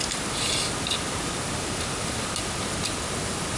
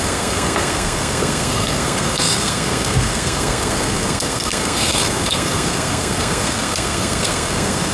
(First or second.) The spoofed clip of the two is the second